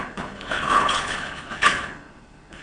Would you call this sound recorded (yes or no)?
no